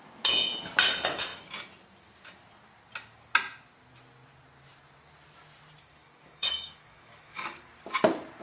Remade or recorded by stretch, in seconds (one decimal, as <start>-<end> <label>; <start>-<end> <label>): 0.0-5.8 recorded; 5.8-7.7 remade; 7.7-8.4 recorded